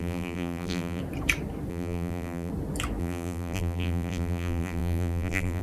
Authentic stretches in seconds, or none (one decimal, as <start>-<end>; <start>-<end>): 1.0-1.7; 2.5-3.0